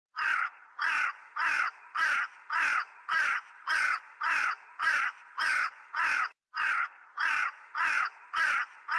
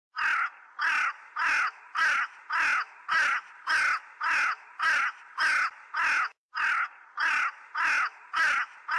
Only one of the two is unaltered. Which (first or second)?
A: second